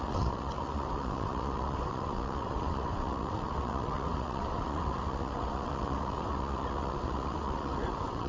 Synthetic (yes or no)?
yes